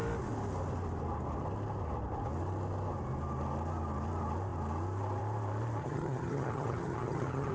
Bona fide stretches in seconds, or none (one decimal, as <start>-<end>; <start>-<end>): 0.0-5.8